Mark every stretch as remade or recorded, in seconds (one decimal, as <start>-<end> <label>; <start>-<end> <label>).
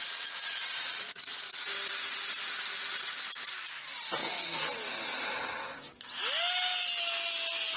0.0-1.6 remade; 1.6-7.8 recorded